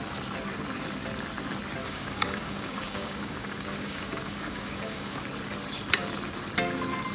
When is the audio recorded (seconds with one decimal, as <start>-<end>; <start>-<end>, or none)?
0.0-1.8; 5.2-7.1